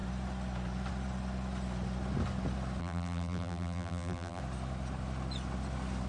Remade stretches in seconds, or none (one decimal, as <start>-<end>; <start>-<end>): 2.8-4.4